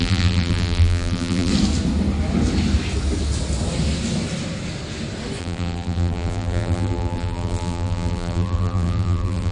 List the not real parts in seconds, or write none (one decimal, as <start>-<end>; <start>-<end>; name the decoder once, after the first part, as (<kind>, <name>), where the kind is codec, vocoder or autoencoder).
0.0-1.5 (vocoder, BigVGAN v2); 5.4-9.5